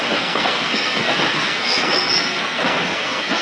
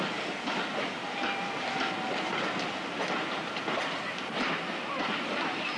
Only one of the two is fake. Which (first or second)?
first